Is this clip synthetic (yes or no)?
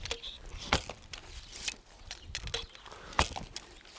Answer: no